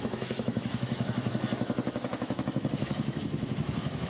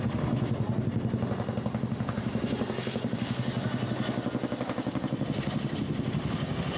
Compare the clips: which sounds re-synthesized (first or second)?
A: first